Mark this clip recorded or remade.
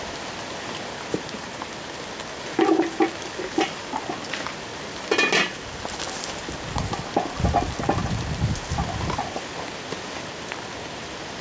recorded